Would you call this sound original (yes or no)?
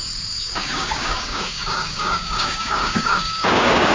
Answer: no